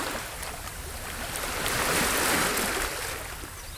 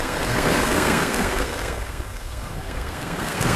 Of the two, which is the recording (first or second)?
first